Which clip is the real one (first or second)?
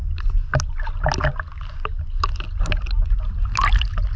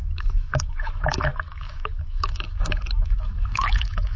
first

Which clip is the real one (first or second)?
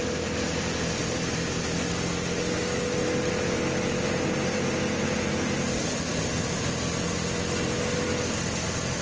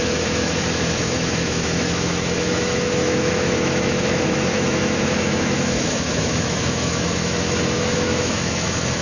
first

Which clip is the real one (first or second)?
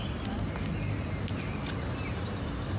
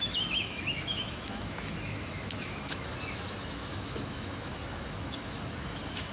first